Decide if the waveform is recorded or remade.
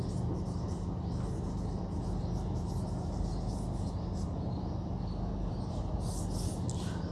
recorded